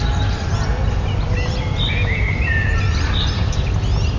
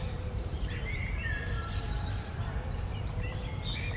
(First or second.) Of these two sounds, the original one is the first